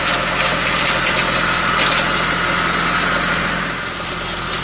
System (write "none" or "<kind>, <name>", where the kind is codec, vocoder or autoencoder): none